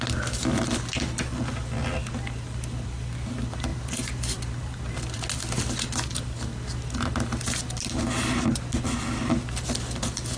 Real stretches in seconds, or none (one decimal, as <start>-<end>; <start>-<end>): 0.0-3.7; 5.2-10.4